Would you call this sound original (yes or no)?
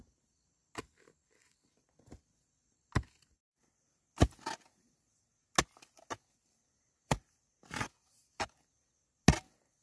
yes